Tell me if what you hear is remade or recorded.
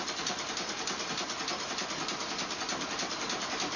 recorded